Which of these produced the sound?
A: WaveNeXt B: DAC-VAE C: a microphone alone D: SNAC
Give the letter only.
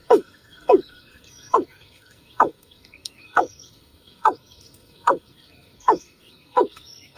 D